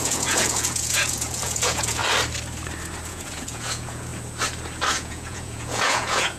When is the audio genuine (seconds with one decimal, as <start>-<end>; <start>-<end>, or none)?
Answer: 2.0-3.1; 4.1-4.9